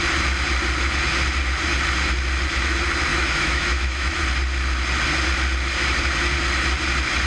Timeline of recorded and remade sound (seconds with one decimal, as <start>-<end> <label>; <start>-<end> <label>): 0.0-3.1 recorded; 3.1-4.1 remade; 4.1-7.3 recorded